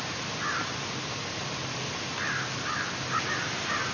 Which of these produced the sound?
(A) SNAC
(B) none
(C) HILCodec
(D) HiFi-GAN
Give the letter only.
B